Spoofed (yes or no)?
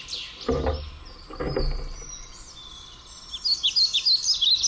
no